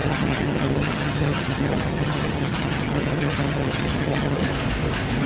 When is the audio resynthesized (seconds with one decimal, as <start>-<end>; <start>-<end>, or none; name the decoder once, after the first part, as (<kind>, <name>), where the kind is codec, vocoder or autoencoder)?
0.0-4.4 (vocoder, HiFi-GAN)